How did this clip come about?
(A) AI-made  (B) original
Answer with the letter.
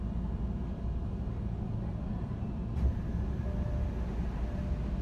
B